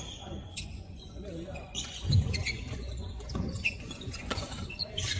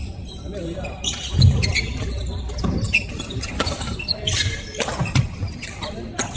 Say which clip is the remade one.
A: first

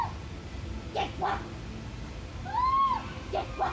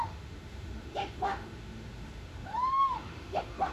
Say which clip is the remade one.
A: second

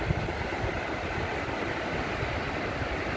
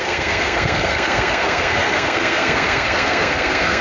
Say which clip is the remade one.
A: second